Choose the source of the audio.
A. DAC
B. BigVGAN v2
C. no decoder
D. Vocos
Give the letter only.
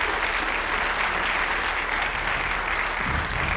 C